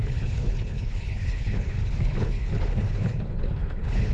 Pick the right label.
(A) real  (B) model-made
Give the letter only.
B